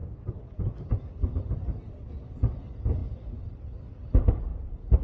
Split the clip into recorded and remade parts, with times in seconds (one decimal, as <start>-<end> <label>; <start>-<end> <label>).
0.0-3.0 recorded; 3.0-3.8 remade; 3.8-4.5 recorded; 4.5-5.0 remade